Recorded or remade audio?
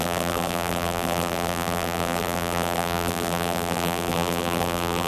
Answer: remade